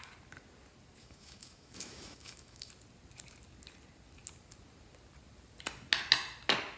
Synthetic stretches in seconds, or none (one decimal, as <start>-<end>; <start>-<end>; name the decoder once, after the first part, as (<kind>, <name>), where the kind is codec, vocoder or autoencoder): 1.0-2.7 (autoencoder, DAC-VAE)

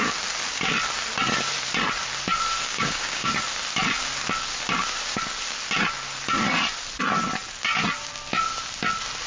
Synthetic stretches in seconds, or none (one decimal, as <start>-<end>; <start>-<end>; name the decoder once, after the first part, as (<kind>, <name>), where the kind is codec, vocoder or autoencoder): 2.6-3.3 (codec, DAC)